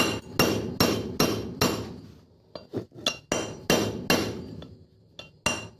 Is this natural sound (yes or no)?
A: yes